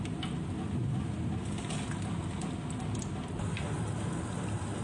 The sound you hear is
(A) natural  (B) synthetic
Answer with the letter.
A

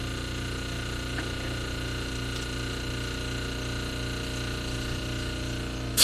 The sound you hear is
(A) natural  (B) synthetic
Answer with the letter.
A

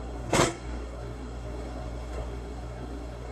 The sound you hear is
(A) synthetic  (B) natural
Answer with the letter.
A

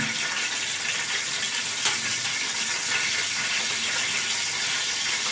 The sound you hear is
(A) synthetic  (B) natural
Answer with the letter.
B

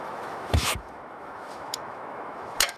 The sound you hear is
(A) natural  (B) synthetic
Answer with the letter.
B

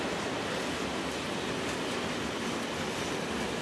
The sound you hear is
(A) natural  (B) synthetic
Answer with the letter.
A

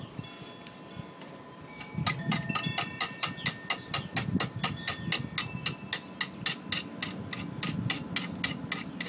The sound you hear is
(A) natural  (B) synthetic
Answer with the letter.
A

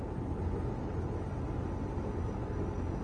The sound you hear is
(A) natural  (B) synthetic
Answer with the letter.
A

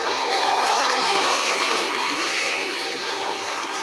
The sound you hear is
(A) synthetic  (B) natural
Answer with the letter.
A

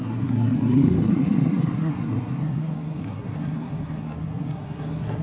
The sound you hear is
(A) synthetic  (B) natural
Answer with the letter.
A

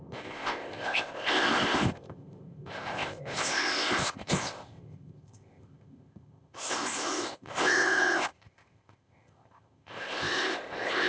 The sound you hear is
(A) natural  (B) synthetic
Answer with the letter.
B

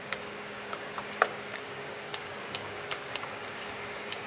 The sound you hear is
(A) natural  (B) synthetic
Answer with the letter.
B